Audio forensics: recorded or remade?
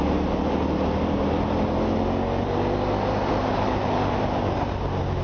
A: recorded